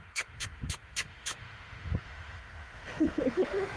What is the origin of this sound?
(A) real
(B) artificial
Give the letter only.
B